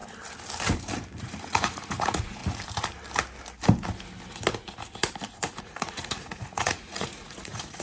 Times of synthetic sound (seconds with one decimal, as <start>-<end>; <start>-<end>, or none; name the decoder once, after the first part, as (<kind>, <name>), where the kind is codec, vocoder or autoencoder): 1.2-2.4 (vocoder, Vocos); 5.6-7.8